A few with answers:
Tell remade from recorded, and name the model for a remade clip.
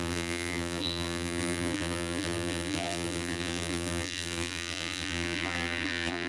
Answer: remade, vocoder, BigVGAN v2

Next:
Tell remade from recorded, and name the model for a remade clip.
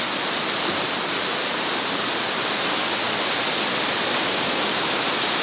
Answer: recorded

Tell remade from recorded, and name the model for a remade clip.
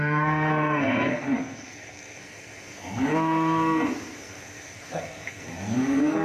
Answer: remade, codec, SNAC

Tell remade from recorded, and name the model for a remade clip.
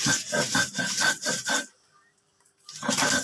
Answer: remade, vocoder, BigVGAN v2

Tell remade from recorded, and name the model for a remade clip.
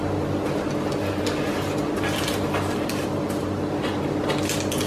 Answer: recorded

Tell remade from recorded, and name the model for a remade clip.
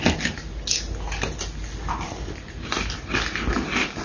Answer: recorded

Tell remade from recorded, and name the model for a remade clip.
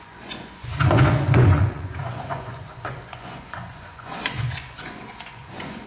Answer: remade, vocoder, Vocos